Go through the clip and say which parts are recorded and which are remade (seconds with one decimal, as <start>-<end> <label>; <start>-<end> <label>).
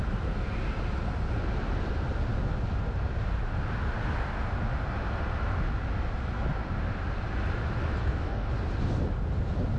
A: 0.0-8.0 recorded; 8.0-8.5 remade; 8.5-9.8 recorded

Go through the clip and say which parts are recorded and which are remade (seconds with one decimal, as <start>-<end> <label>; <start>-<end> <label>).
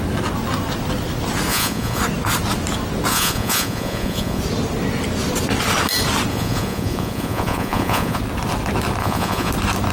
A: 0.0-1.5 recorded; 1.5-2.0 remade; 2.0-3.1 recorded; 3.1-4.4 remade; 4.4-6.3 recorded; 6.3-8.2 remade; 8.2-9.0 recorded; 9.0-9.5 remade; 9.5-9.9 recorded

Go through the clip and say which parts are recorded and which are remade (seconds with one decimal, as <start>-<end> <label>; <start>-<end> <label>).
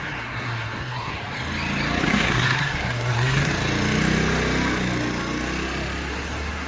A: 0.0-1.2 remade; 1.2-2.0 recorded; 2.0-3.5 remade; 3.5-6.1 recorded; 6.1-6.7 remade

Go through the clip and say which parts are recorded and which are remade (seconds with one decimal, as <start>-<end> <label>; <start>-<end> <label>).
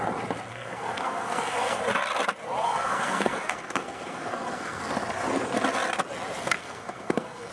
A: 0.0-0.5 recorded; 0.5-1.8 remade; 1.8-2.6 recorded; 2.6-4.8 remade; 4.8-6.6 recorded; 6.6-7.5 remade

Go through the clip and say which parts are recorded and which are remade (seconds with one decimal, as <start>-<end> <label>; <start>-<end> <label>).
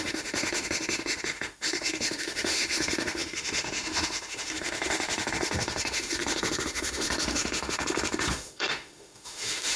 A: 0.0-9.8 remade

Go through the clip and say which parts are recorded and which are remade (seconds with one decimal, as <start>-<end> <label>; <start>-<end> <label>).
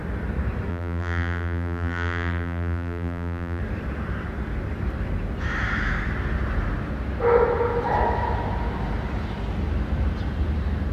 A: 0.0-0.7 recorded; 0.7-3.6 remade; 3.6-10.9 recorded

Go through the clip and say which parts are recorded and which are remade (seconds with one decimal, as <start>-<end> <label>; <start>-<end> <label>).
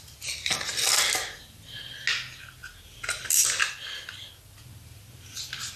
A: 0.0-5.8 recorded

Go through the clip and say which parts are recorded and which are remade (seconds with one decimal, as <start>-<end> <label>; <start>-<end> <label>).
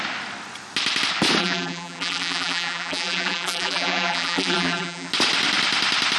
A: 0.0-1.4 recorded; 1.4-5.1 remade; 5.1-6.2 recorded